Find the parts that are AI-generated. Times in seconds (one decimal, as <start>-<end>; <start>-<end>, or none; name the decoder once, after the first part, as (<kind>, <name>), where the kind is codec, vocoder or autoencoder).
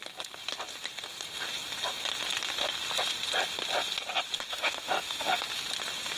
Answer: 4.5-5.4 (autoencoder, DAC-VAE)